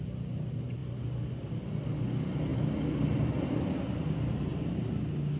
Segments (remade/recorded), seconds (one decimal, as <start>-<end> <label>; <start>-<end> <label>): 0.0-5.4 recorded

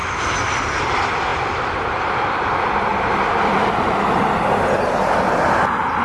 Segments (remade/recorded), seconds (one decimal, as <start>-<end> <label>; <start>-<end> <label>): 0.0-1.3 recorded; 1.3-4.7 remade; 4.7-6.0 recorded

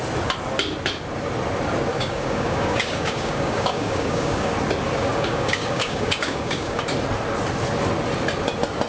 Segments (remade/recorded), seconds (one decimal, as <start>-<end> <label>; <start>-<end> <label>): 0.0-1.9 recorded; 1.9-4.5 remade; 4.5-5.1 recorded; 5.1-6.8 remade; 6.8-8.9 recorded

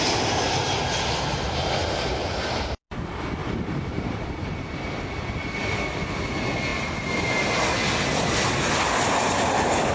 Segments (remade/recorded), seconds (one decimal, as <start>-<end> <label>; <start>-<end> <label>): 0.0-1.8 recorded; 1.8-2.7 remade; 2.7-3.4 recorded; 3.4-4.2 remade; 4.2-9.9 recorded

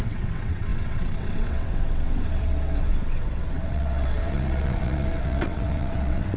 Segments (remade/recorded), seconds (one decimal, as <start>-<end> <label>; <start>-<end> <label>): 0.0-6.4 remade